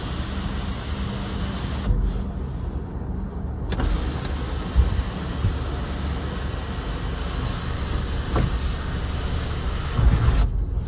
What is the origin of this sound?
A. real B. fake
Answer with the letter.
A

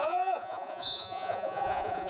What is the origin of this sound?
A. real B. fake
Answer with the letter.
B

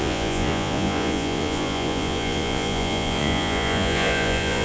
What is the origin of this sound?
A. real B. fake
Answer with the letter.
B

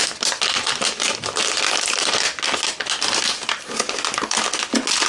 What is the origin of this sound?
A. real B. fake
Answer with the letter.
A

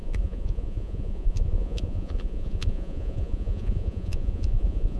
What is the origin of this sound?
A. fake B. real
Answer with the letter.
A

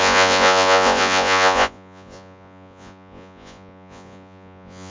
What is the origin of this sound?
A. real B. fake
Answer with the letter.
B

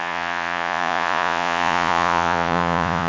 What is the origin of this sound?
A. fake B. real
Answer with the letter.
A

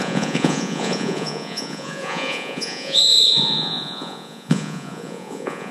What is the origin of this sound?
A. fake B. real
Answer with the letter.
A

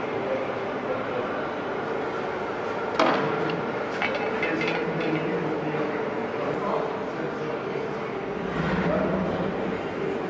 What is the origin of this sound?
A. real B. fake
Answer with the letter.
A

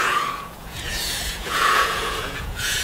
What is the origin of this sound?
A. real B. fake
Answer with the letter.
B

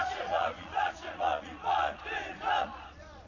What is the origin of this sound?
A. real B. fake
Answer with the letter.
B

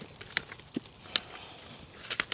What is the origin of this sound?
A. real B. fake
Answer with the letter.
A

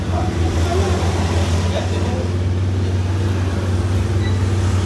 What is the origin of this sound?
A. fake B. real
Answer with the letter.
B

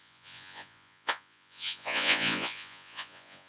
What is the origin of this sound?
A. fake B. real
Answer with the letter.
A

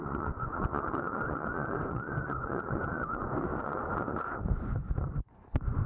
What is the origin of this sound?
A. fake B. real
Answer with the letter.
A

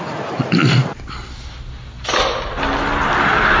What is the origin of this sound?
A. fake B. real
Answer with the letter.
B